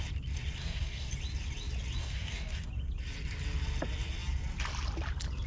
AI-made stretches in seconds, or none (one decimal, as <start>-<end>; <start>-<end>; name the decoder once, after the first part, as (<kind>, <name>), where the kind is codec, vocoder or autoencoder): 0.6-1.1 (codec, DAC); 2.0-2.7